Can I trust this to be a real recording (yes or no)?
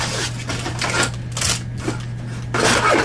yes